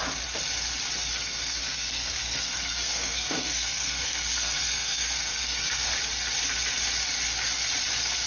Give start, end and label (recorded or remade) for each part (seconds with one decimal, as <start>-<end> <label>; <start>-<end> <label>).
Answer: 0.0-1.1 recorded; 1.1-5.9 remade; 5.9-8.3 recorded